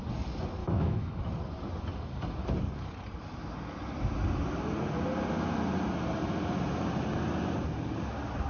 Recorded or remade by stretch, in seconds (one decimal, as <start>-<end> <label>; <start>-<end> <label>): 0.0-0.6 recorded; 0.6-1.2 remade; 1.2-8.5 recorded